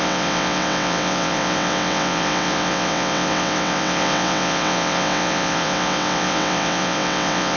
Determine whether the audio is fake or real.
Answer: fake